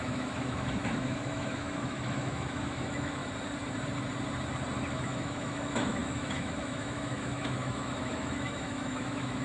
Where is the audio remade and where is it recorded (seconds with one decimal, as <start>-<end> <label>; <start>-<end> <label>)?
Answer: 0.0-3.2 remade; 3.2-4.9 recorded; 4.9-9.4 remade

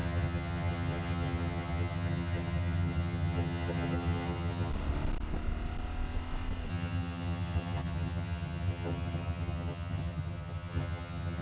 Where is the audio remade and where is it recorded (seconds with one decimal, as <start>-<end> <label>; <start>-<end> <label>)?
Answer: 0.0-4.7 remade; 4.7-6.7 recorded; 6.7-11.4 remade

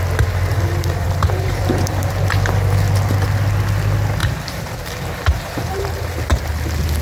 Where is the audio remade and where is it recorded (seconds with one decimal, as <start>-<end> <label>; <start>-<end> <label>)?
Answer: 0.0-0.5 recorded; 0.5-2.1 remade; 2.1-4.2 recorded; 4.2-6.2 remade; 6.2-7.0 recorded

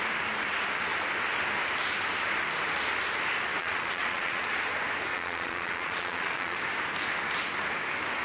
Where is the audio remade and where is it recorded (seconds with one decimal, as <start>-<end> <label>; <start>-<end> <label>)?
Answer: 0.0-3.6 recorded; 3.6-4.5 remade; 4.5-5.1 recorded; 5.1-6.6 remade; 6.6-8.2 recorded

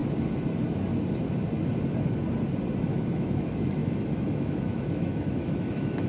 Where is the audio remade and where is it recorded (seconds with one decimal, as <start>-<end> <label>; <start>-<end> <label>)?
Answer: 0.0-2.8 recorded; 2.8-6.1 remade

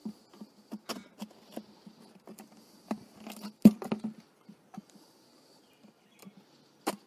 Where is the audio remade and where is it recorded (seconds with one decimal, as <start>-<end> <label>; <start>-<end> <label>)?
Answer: 0.0-7.1 recorded

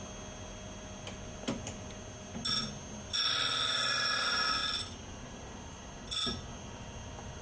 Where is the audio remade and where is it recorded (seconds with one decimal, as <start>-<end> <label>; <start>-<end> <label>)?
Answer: 0.0-7.4 recorded